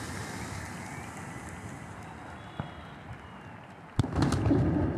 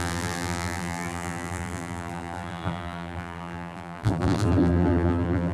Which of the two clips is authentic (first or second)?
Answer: first